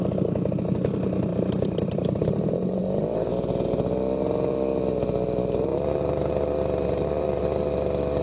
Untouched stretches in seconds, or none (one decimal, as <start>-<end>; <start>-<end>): 0.0-1.3; 3.3-5.7; 7.4-8.2